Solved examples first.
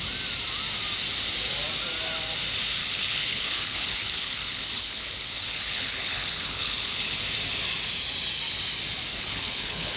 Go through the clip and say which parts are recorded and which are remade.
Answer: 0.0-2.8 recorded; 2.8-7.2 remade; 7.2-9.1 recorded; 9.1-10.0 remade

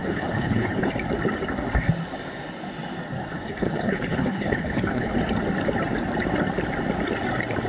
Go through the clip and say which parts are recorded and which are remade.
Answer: 0.0-0.9 remade; 0.9-3.3 recorded; 3.3-5.1 remade; 5.1-7.7 recorded

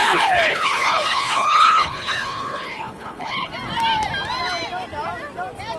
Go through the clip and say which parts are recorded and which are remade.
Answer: 0.0-3.5 remade; 3.5-5.8 recorded

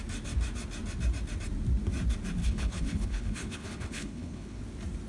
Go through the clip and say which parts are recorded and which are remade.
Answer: 0.0-2.4 recorded; 2.4-4.6 remade; 4.6-5.1 recorded